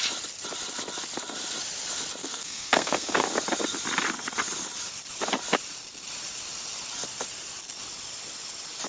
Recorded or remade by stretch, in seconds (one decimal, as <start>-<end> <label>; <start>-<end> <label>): 0.0-2.2 recorded; 2.2-3.3 remade; 3.3-8.9 recorded